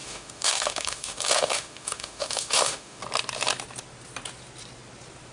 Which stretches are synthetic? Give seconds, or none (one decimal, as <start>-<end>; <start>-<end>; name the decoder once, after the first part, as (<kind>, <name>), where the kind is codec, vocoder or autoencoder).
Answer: 0.0-3.0 (autoencoder, DAC-VAE)